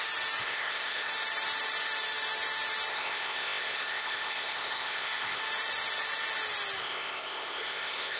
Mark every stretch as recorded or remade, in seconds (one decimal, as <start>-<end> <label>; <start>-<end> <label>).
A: 0.0-0.4 recorded; 0.4-1.1 remade; 1.1-2.9 recorded; 2.9-5.4 remade; 5.4-6.8 recorded; 6.8-8.2 remade